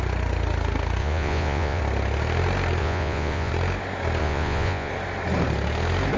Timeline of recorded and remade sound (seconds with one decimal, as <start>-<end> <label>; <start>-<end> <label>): 0.0-1.0 recorded; 1.0-1.8 remade; 1.8-2.8 recorded; 2.8-3.5 remade; 3.5-4.2 recorded; 4.2-4.9 remade; 4.9-6.2 recorded